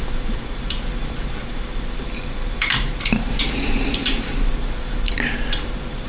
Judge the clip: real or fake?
fake